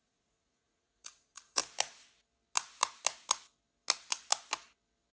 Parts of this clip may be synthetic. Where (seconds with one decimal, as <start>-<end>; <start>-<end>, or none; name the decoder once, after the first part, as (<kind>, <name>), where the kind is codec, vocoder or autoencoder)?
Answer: 0.0-1.6 (vocoder, Vocos)

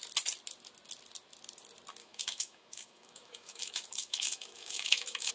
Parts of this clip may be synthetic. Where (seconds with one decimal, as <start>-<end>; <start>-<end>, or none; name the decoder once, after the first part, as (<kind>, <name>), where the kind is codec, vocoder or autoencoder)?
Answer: 2.0-5.3 (autoencoder, DAC-VAE)

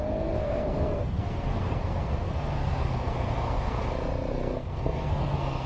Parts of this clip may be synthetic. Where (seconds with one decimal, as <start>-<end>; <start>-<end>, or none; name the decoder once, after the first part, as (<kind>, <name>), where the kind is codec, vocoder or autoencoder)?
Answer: 0.0-3.8 (codec, SNAC); 4.3-5.7

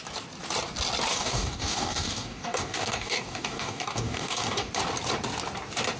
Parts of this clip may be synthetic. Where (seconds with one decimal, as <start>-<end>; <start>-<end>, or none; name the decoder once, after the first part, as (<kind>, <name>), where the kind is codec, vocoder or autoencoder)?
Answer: 1.1-4.7 (codec, DAC)

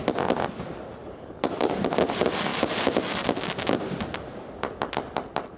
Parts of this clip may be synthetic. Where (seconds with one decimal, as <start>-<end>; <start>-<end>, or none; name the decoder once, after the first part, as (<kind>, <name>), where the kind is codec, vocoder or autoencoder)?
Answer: 1.0-1.9 (codec, DAC)

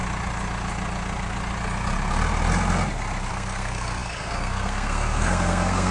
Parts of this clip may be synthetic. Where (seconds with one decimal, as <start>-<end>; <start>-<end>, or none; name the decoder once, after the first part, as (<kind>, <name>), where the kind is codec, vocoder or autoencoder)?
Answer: 3.3-5.9 (codec, SNAC)

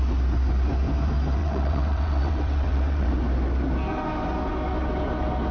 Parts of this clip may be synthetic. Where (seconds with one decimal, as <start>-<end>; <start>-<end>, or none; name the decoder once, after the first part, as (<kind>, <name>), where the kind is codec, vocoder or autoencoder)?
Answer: 1.4-3.1 (vocoder, WaveNeXt)

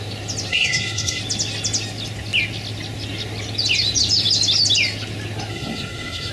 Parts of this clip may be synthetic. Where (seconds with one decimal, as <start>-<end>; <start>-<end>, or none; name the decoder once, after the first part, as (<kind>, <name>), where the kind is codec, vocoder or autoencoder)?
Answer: 0.5-1.2 (codec, SNAC); 5.5-6.3